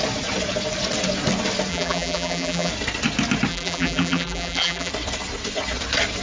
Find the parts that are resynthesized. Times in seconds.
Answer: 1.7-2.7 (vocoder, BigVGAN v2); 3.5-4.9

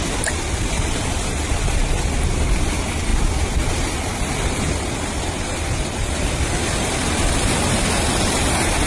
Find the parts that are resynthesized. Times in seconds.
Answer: none

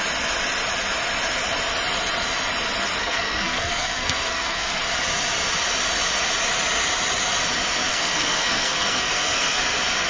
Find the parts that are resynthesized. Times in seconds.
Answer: 3.0-4.8 (codec, SNAC); 7.9-9.6

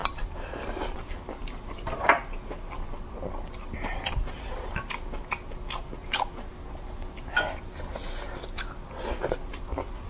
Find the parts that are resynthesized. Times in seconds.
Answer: 0.0-1.0 (vocoder, BigVGAN v2); 6.0-6.5

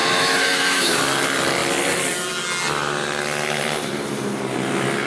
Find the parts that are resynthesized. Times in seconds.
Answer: 0.0-1.0 (autoencoder, DAC-VAE)

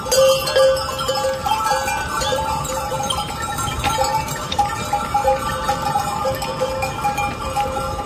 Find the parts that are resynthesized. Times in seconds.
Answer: 1.4-3.9 (vocoder, BigVGAN v2)